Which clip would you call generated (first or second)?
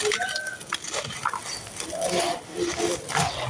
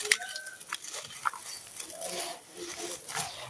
second